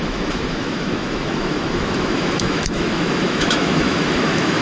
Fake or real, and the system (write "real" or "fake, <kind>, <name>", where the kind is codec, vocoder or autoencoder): fake, autoencoder, DAC-VAE